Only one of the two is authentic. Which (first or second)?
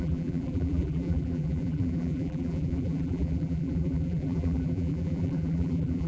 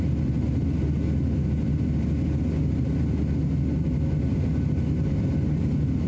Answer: second